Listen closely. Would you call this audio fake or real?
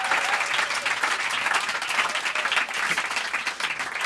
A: real